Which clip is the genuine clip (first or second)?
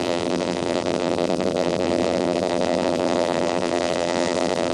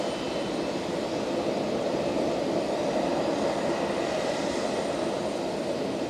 second